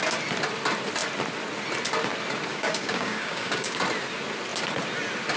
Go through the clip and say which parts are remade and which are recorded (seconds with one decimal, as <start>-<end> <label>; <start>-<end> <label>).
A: 0.0-2.5 recorded; 2.5-3.8 remade; 3.8-5.4 recorded